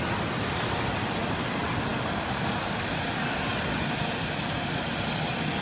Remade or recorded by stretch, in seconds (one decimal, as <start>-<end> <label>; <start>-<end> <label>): 0.0-5.6 recorded